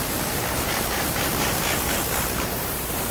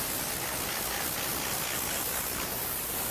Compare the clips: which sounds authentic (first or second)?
second